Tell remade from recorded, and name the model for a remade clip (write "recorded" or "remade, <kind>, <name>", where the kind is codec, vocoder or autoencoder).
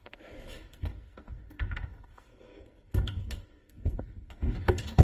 remade, codec, SNAC